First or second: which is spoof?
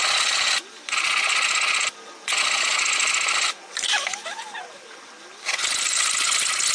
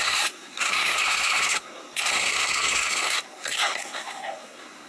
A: second